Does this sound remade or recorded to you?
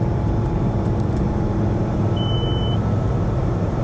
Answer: remade